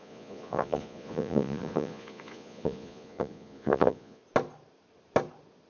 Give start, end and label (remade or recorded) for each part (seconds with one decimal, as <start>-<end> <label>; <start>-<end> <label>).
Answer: 0.0-4.2 remade; 4.2-5.7 recorded